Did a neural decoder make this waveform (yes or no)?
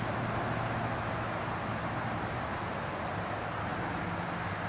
no